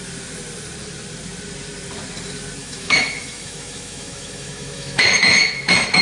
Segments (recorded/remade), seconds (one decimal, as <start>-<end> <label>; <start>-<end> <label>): 0.0-2.6 recorded; 2.6-6.0 remade